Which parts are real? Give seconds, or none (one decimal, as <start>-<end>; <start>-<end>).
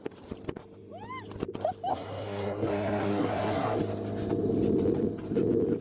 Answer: 0.0-1.9; 3.8-5.8